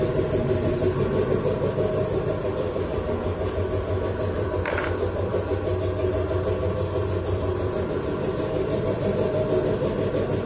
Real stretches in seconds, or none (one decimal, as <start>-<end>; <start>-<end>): 0.8-2.4; 5.5-6.1